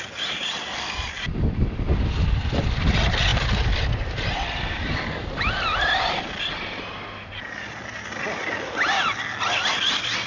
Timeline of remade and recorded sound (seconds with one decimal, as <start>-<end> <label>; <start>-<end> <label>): 0.0-10.3 recorded